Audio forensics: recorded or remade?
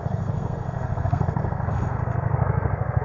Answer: remade